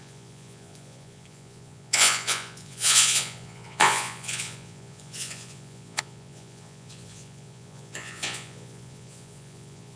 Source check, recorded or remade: remade